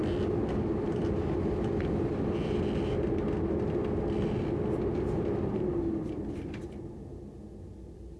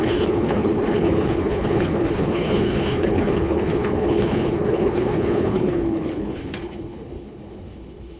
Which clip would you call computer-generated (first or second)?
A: second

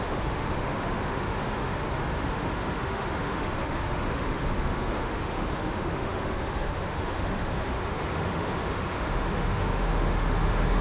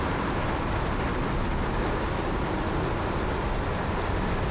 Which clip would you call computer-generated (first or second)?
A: first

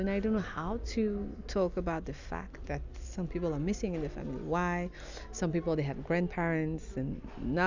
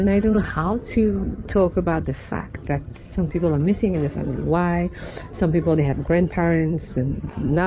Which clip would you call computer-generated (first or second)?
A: second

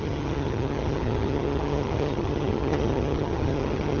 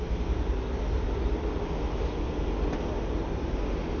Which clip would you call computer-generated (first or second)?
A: first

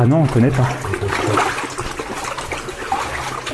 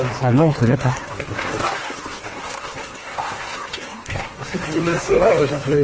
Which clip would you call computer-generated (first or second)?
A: second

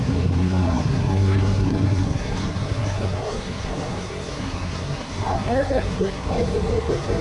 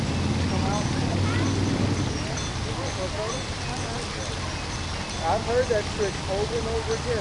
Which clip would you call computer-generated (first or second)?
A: first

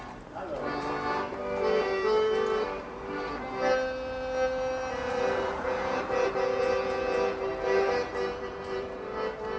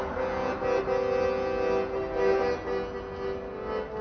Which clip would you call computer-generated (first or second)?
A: first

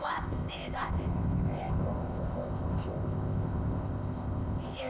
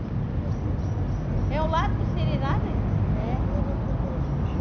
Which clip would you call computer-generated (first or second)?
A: first